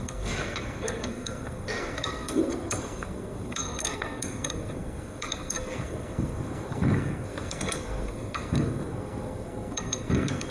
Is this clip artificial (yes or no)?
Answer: yes